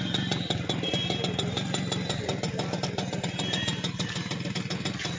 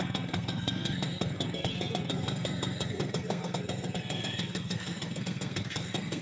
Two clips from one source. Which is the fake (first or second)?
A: second